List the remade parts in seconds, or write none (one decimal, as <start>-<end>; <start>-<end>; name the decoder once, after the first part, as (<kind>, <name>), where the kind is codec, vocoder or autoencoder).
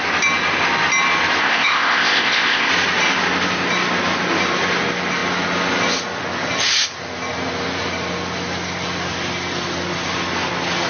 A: 1.4-2.7 (codec, ZipCodec)